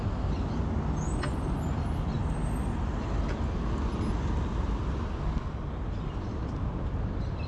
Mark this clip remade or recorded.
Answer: recorded